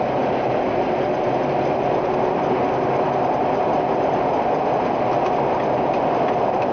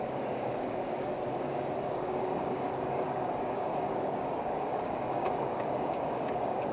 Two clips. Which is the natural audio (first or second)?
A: first